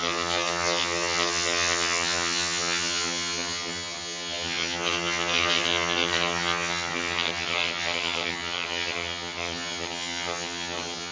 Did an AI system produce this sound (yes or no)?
yes